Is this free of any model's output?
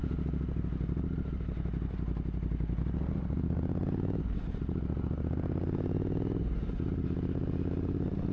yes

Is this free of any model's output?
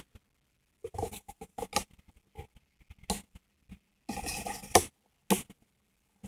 yes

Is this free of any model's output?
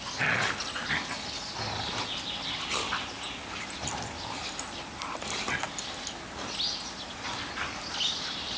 yes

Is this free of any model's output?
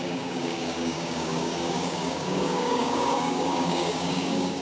no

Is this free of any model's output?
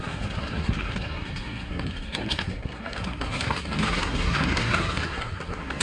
no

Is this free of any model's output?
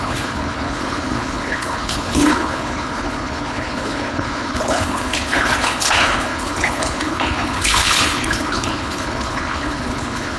no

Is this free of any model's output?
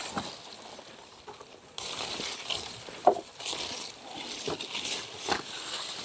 yes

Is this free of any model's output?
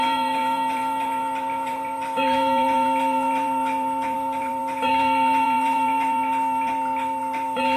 no